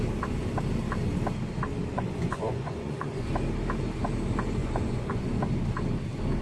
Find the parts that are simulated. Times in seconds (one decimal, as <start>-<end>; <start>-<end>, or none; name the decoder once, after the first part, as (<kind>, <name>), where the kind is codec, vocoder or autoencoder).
1.9-3.3 (vocoder, Vocos); 4.6-5.3